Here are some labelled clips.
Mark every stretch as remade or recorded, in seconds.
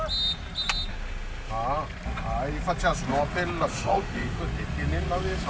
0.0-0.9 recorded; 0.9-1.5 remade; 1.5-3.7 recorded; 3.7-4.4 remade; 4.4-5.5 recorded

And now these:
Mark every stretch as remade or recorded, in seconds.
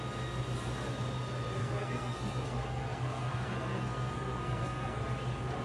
0.0-1.6 recorded; 1.6-5.0 remade; 5.0-5.6 recorded